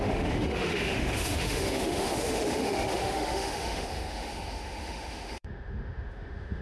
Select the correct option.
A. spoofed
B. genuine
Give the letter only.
A